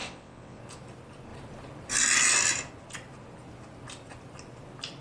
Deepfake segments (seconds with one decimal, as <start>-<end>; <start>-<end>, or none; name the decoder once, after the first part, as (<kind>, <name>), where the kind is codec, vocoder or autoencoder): 0.0-0.6 (vocoder, WaveNeXt)